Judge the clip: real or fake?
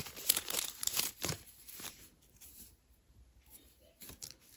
fake